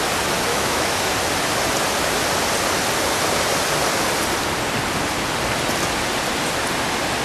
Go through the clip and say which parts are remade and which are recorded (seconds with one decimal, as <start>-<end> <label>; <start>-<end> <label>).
0.0-0.5 recorded; 0.5-1.1 remade; 1.1-7.2 recorded